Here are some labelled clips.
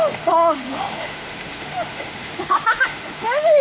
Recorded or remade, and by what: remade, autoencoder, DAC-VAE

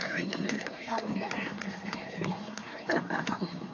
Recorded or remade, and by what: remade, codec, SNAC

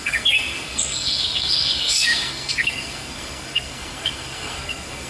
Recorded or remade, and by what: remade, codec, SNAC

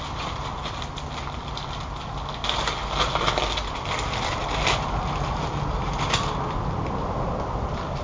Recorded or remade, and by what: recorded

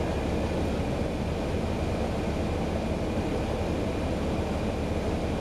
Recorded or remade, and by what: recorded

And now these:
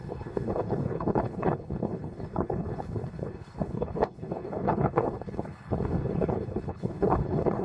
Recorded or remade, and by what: remade, codec, HILCodec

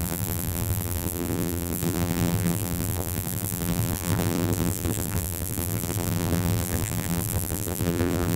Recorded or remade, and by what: remade, vocoder, BigVGAN v2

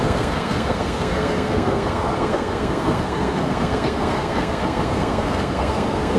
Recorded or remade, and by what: remade, codec, SNAC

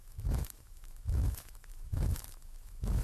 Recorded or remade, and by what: remade, autoencoder, DAC-VAE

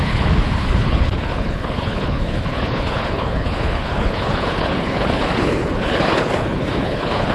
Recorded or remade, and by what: remade, codec, HILCodec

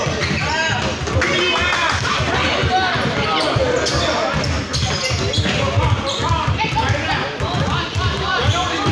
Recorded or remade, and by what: recorded